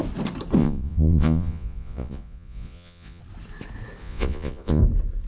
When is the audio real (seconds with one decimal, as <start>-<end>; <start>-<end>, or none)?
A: 0.0-0.6; 3.2-4.0; 4.8-5.3